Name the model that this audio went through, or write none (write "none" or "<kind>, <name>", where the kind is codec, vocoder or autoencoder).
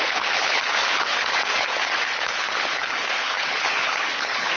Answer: codec, HILCodec